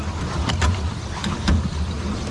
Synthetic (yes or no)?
no